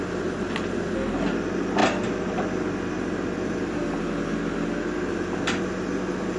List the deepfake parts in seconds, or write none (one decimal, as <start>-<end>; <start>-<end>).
none